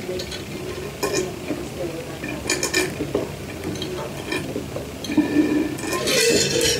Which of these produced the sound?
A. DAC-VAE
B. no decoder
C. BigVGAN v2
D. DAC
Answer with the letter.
B